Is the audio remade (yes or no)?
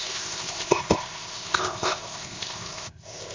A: yes